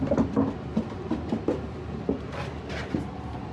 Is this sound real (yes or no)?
yes